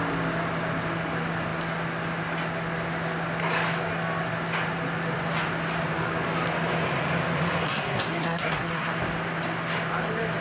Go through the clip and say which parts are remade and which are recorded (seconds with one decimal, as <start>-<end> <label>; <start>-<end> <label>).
0.0-7.6 recorded; 7.6-8.9 remade; 8.9-10.4 recorded